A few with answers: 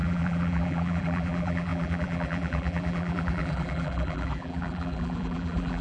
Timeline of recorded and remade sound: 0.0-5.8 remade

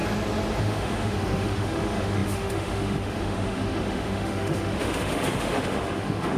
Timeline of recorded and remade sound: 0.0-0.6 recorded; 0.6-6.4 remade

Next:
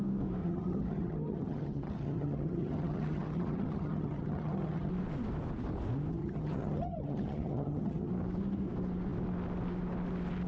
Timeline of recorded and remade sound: 0.0-0.4 recorded; 0.4-4.9 remade; 4.9-6.2 recorded; 6.2-8.1 remade; 8.1-10.5 recorded

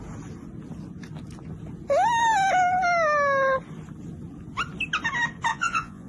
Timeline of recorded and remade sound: 0.0-5.5 recorded; 5.5-6.1 remade

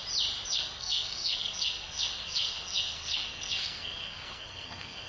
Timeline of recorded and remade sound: 0.0-0.5 recorded; 0.5-5.1 remade

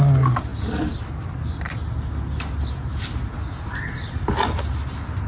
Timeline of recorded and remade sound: 0.0-5.3 recorded

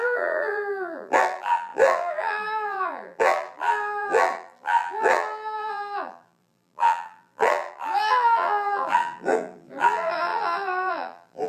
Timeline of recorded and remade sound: 0.0-11.5 remade

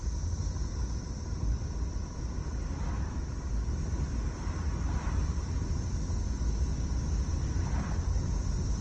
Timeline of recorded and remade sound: 0.0-8.8 recorded